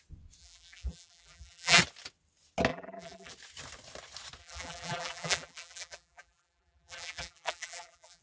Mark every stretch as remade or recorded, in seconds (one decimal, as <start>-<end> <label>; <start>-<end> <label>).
0.0-0.4 recorded; 0.4-1.8 remade; 1.8-2.7 recorded; 2.7-3.3 remade; 3.3-4.4 recorded; 4.4-8.2 remade